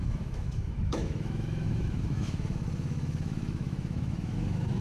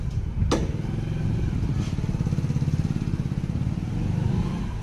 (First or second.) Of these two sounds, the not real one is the first